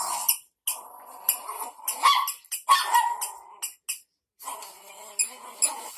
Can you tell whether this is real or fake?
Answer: real